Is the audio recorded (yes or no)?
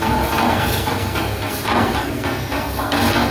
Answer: no